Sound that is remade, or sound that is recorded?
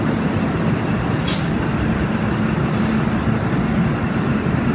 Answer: recorded